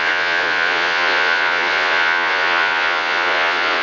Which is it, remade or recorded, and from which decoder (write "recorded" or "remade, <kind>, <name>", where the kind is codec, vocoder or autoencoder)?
remade, vocoder, Vocos